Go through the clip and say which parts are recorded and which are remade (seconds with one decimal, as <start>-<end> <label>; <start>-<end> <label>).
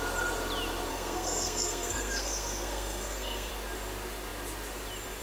0.0-0.9 recorded; 0.9-3.5 remade; 3.5-5.2 recorded